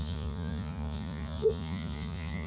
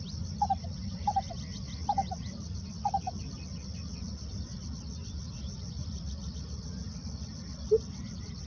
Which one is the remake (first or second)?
first